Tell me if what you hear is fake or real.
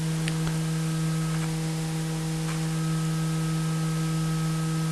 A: real